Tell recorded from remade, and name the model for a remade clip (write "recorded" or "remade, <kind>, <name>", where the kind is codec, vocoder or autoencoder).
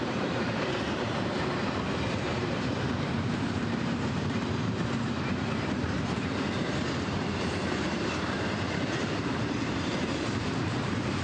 remade, vocoder, BigVGAN v2